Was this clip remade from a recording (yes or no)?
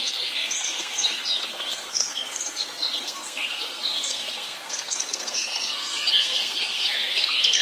yes